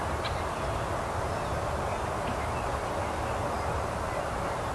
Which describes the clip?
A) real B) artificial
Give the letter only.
A